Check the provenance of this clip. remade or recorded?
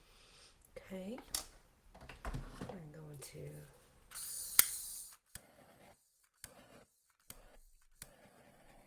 recorded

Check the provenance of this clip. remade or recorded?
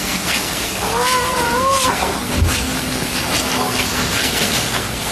remade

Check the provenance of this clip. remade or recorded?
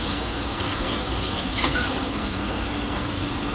remade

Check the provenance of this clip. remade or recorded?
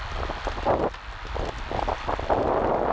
recorded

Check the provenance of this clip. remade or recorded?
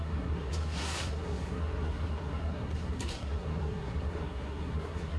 remade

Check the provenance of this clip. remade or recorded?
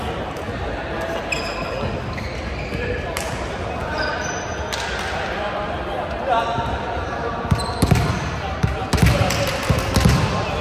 recorded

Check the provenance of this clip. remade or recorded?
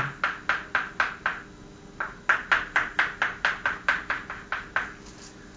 recorded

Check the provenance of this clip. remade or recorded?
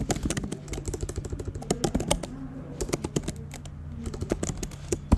recorded